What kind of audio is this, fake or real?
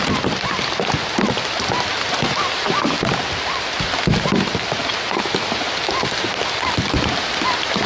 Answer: real